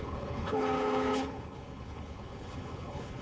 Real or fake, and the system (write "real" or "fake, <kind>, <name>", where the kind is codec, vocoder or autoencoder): fake, codec, HILCodec